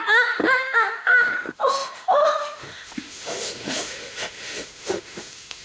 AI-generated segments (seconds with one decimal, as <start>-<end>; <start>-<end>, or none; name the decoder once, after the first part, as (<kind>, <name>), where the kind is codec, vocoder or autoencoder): 0.0-5.6 (autoencoder, DAC-VAE)